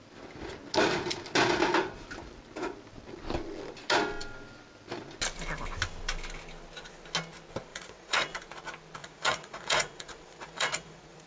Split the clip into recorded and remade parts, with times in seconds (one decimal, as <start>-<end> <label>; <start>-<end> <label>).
0.0-7.7 recorded; 7.7-8.4 remade; 8.4-9.0 recorded; 9.0-11.3 remade